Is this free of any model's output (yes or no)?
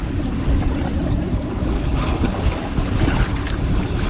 yes